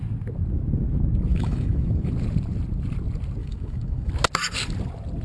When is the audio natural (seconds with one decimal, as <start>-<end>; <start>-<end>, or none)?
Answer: 0.0-1.3; 2.1-3.4; 4.1-5.2